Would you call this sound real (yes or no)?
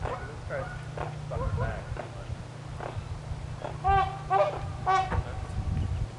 yes